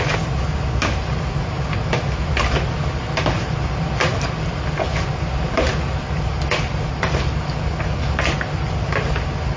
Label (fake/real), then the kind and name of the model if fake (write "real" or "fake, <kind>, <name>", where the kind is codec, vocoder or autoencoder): real